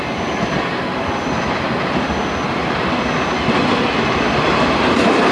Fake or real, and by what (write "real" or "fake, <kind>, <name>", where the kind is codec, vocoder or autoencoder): real